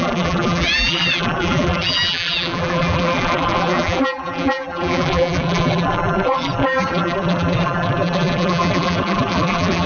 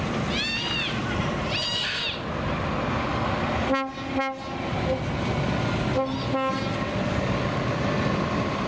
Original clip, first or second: second